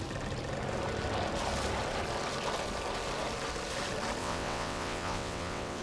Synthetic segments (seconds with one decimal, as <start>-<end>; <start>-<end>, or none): 4.2-5.8